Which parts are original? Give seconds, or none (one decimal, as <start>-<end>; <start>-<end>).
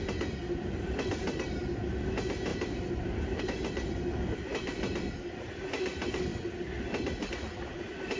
0.0-2.5; 3.4-8.2